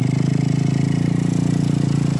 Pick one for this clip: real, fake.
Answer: real